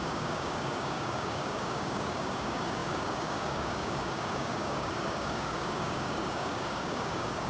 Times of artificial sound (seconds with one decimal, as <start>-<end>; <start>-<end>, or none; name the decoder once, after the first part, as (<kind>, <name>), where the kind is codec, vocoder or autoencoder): 0.0-7.5 (codec, DAC)